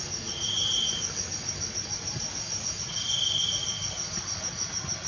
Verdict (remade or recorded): recorded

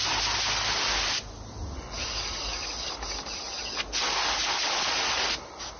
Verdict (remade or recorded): recorded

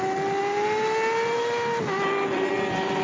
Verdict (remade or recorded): recorded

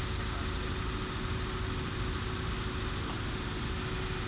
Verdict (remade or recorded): recorded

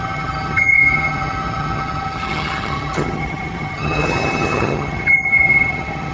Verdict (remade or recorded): remade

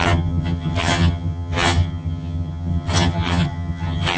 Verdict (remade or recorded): remade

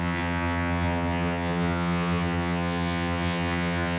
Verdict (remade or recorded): remade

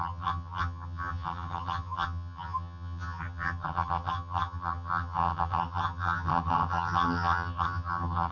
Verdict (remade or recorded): remade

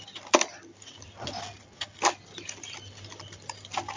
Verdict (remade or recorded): recorded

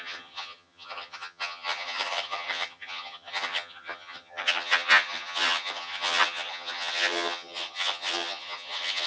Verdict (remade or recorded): remade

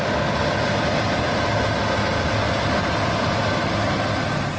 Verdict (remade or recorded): recorded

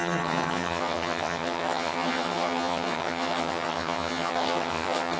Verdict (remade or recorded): remade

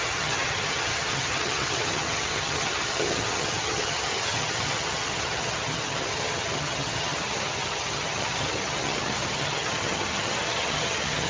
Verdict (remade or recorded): remade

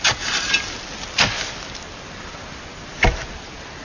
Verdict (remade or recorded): recorded